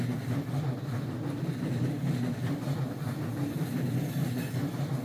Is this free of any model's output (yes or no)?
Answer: yes